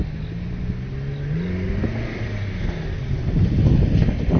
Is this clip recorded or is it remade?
recorded